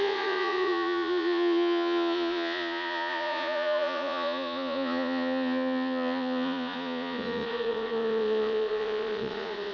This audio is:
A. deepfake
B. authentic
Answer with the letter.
A